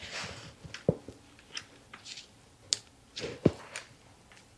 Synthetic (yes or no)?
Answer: no